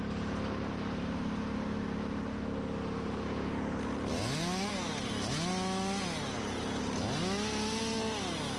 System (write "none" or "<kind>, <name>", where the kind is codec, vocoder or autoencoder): none